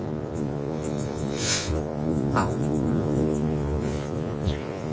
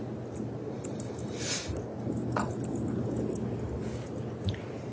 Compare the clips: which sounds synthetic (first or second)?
first